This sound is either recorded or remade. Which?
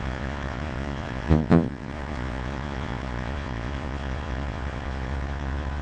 remade